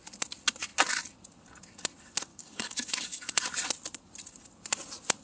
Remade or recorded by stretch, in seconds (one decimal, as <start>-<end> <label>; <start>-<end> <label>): 0.0-2.3 recorded; 2.3-3.4 remade; 3.4-5.2 recorded